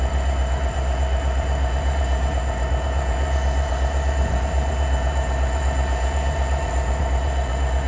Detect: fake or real fake